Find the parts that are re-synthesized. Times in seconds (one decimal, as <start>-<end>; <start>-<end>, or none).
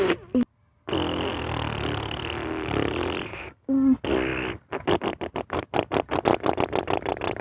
none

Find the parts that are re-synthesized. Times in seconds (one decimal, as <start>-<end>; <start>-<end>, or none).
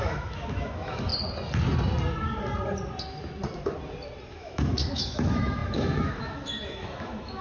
0.0-1.1; 4.3-7.4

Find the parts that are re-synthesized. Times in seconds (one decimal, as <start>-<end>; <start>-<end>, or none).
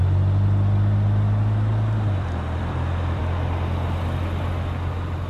0.0-3.2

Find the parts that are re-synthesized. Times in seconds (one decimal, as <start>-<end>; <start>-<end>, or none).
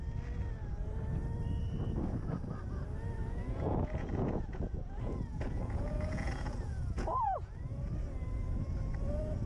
3.2-7.9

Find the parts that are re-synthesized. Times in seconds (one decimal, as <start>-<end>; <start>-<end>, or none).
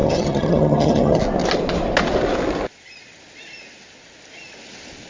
0.0-1.2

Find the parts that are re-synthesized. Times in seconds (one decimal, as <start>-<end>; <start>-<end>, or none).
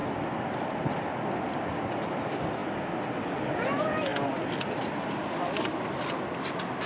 none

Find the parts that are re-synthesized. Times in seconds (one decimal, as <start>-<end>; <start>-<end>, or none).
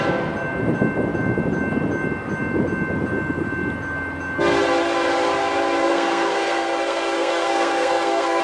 5.8-8.4